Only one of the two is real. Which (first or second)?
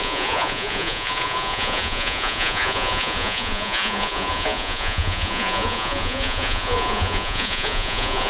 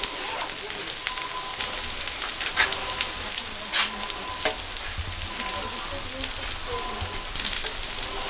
second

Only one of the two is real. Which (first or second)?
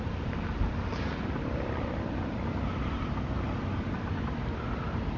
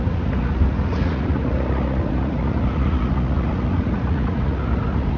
first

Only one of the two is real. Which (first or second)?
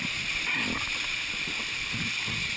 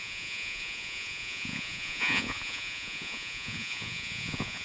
first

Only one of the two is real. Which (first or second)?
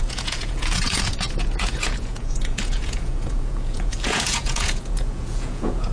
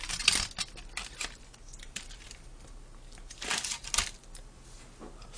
second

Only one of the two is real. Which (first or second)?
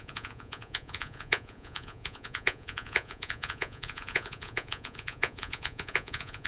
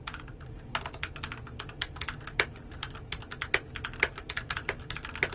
second